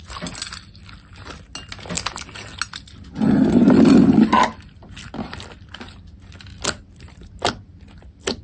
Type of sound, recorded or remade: recorded